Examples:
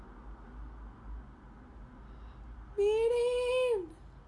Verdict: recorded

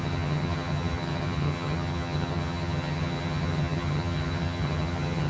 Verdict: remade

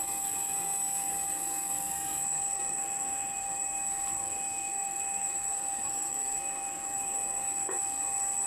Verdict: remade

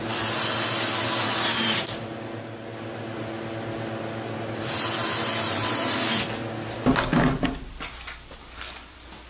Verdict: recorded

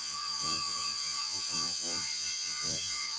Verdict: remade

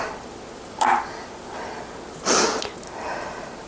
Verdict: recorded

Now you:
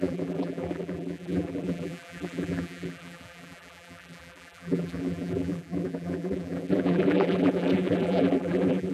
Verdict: remade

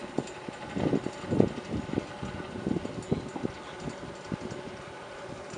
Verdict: recorded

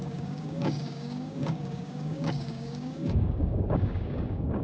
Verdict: remade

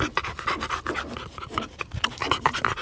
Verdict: recorded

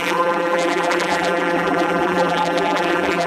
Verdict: remade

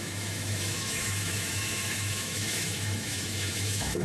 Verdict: remade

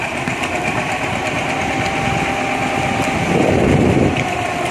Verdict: recorded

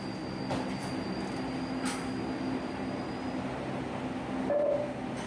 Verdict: recorded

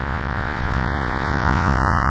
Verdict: remade